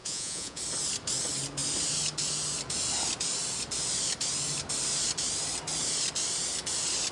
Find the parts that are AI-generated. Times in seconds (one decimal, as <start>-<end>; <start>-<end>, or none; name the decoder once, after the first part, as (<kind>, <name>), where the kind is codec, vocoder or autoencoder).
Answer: 0.0-0.6 (vocoder, Vocos)